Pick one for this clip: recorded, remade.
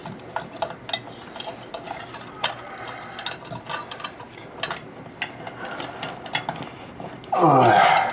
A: recorded